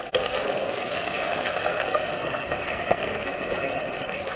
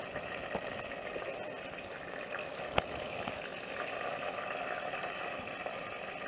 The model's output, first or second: first